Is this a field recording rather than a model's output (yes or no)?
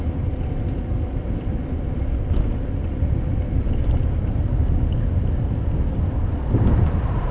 yes